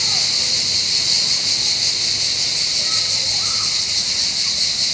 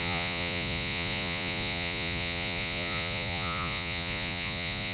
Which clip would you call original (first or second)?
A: first